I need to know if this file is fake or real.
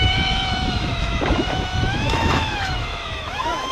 fake